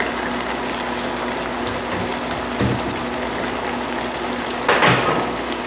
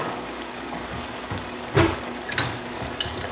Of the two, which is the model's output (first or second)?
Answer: second